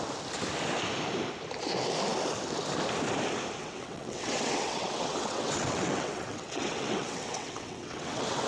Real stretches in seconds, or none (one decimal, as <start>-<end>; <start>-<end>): 0.0-3.6